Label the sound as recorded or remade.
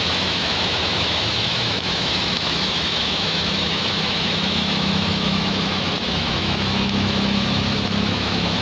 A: remade